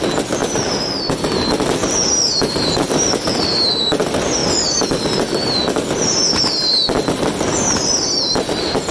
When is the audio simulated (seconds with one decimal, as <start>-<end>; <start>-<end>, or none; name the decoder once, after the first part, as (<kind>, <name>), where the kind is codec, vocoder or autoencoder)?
none